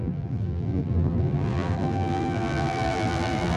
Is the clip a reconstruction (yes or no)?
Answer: yes